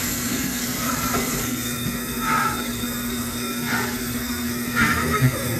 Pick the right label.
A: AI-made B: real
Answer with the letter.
A